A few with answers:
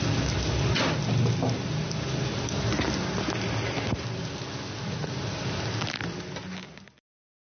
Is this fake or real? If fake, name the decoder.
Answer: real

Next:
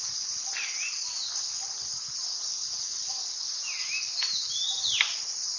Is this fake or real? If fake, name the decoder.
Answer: real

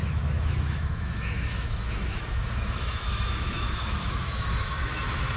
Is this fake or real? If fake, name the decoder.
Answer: fake, autoencoder, DAC-VAE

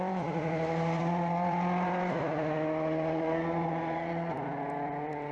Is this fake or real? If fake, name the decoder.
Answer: fake, vocoder, BigVGAN v2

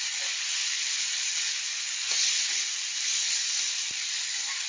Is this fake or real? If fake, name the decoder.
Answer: real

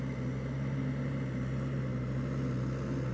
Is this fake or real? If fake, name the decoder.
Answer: real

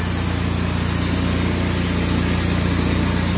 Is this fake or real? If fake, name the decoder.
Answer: real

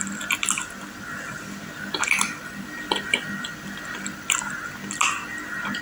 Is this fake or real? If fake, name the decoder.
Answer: real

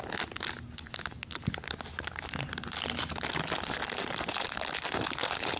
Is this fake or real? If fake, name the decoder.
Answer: real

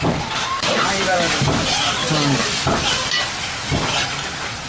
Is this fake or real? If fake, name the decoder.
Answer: real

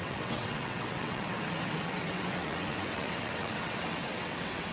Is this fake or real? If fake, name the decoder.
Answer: fake, vocoder, WaveNeXt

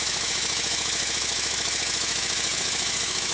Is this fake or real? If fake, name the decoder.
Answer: fake, autoencoder, DAC-VAE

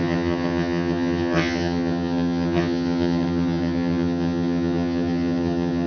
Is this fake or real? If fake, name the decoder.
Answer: fake, vocoder, HiFi-GAN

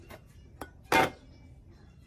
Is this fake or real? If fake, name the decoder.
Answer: real